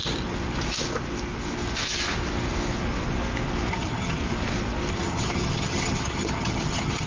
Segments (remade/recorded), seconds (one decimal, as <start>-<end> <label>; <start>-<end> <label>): 0.0-3.7 recorded; 3.7-4.2 remade; 4.2-4.9 recorded; 4.9-7.1 remade